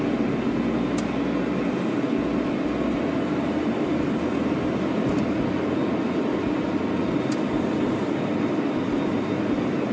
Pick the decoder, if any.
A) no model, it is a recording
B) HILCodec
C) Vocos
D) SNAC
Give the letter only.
A